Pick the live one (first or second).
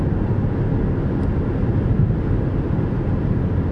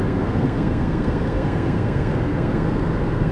first